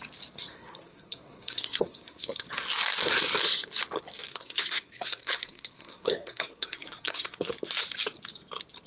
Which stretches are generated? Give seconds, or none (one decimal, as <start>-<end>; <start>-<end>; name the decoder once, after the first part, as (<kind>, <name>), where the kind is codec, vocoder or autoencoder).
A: 0.5-2.5 (codec, SNAC); 4.3-7.5